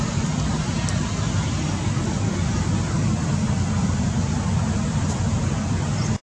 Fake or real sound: real